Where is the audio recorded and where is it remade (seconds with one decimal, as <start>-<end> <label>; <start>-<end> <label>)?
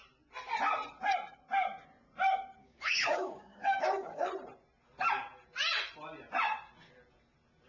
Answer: 0.0-2.6 recorded; 2.6-4.3 remade; 4.3-7.7 recorded